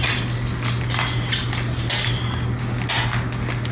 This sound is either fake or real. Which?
real